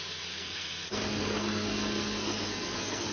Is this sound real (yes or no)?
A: no